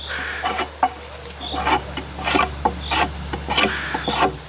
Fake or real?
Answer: real